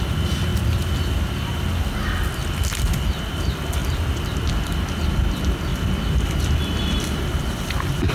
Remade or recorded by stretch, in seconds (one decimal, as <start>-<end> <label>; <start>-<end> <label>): 0.0-8.1 recorded